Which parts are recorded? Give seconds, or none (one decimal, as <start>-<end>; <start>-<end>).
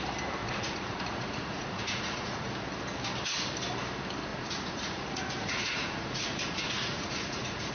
0.0-0.4; 2.5-4.3